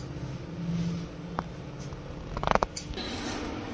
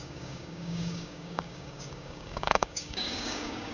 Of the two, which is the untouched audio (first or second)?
first